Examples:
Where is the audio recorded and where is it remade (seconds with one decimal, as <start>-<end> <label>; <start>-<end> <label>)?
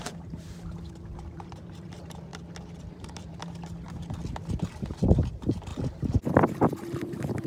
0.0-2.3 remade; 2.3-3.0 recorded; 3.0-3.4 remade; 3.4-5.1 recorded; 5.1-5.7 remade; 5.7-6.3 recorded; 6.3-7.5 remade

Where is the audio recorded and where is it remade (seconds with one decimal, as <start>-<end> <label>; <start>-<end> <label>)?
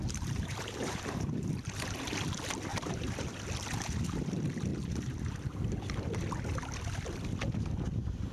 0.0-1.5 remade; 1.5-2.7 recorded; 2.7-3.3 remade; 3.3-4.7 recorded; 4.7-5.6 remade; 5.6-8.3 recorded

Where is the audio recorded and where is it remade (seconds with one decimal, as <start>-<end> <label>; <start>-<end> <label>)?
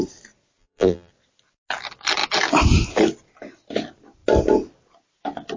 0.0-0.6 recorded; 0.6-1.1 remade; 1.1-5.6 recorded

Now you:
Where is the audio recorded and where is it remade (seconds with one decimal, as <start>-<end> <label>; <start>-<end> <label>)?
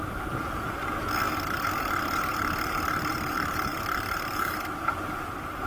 0.0-0.8 remade; 0.8-3.1 recorded; 3.1-3.7 remade; 3.7-4.7 recorded; 4.7-5.7 remade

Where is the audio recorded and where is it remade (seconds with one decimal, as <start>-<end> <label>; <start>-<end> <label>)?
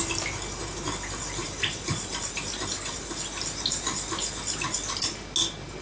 0.0-1.4 recorded; 1.4-2.3 remade; 2.3-5.8 recorded